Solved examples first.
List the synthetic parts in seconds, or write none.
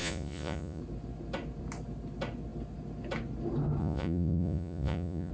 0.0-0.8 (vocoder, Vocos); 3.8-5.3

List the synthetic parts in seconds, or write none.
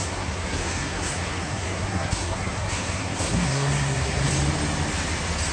0.0-4.3 (codec, SNAC)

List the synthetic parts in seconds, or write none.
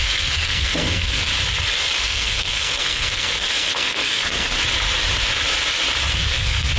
0.0-1.3 (codec, SNAC); 2.0-4.5; 6.1-6.8